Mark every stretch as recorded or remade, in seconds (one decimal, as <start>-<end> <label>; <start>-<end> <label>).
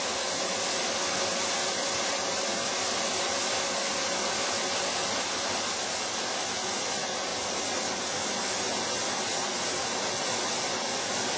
0.0-11.4 recorded